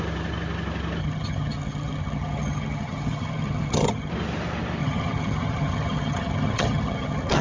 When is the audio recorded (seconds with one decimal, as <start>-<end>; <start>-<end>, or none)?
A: 0.0-1.0; 4.1-4.8